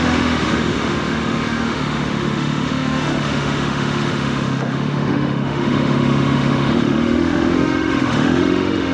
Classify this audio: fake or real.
fake